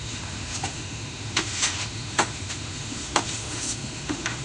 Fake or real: fake